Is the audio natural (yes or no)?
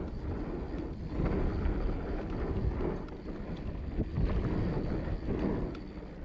yes